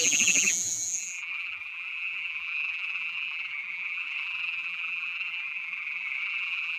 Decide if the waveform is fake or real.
fake